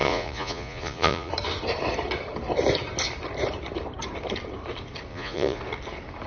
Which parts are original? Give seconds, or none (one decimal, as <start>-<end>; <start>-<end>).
1.3-5.1; 5.6-6.3